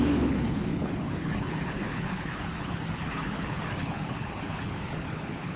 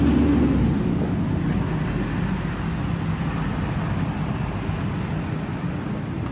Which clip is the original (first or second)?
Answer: second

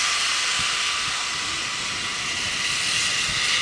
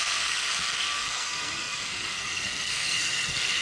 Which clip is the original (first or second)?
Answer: first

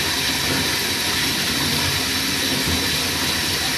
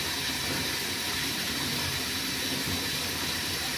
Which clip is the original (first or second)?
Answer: first